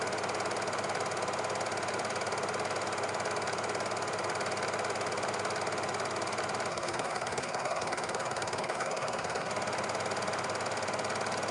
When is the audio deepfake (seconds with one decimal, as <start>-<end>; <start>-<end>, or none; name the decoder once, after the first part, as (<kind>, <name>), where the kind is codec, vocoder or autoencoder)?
6.7-9.5 (codec, SNAC)

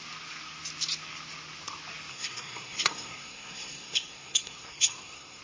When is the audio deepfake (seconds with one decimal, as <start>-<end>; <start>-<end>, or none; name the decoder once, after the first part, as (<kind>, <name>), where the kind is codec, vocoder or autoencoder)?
2.1-5.4 (codec, SNAC)

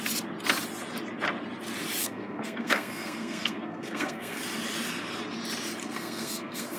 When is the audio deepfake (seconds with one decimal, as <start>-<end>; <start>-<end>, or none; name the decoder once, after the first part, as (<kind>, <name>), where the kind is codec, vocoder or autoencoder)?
2.0-4.4 (codec, SNAC); 5.8-6.8

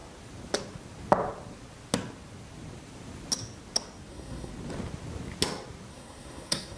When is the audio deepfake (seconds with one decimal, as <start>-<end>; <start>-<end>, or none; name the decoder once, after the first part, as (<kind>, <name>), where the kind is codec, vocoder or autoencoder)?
4.1-4.5 (codec, SNAC); 5.9-6.8

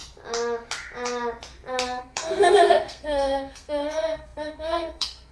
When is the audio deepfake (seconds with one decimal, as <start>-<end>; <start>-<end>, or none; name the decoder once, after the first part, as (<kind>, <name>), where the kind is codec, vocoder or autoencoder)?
2.0-5.3 (codec, SNAC)

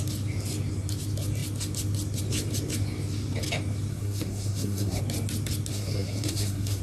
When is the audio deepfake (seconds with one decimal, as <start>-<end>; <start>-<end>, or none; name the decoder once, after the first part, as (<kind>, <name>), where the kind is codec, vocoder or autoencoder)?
3.9-5.0 (codec, SNAC); 5.7-6.8

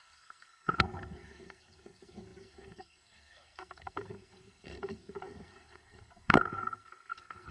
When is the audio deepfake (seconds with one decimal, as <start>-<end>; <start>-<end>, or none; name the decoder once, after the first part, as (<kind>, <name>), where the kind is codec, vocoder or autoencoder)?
0.0-7.5 (codec, SNAC)

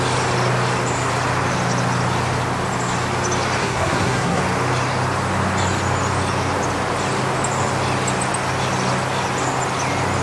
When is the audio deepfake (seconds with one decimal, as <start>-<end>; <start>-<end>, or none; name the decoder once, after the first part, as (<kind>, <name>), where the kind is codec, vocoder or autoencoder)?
3.6-4.4 (codec, SNAC)